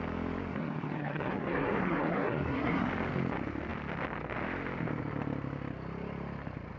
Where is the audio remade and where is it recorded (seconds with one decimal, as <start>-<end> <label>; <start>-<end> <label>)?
0.0-0.5 recorded; 0.5-2.9 remade; 2.9-6.8 recorded